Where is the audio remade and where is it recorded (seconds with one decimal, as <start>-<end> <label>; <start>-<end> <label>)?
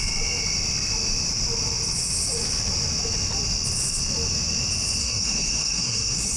0.0-5.0 recorded; 5.0-6.4 remade